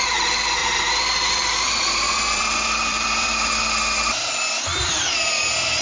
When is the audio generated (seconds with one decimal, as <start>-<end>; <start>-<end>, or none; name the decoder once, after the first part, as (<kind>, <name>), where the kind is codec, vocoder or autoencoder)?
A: 0.6-4.1 (vocoder, BigVGAN v2)